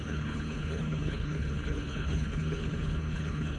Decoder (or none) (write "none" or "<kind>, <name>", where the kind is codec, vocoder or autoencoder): codec, HILCodec